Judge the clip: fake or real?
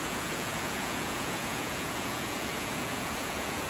fake